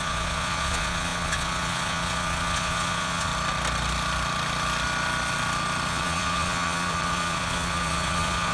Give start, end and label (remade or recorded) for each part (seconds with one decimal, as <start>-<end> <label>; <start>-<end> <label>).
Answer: 0.0-3.3 remade; 3.3-5.9 recorded; 5.9-8.5 remade